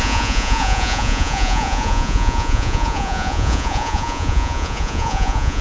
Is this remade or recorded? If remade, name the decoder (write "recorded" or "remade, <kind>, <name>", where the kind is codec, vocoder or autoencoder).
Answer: remade, vocoder, Vocos